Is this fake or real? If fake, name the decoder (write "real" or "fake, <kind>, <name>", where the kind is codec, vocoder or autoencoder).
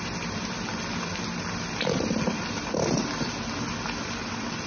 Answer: real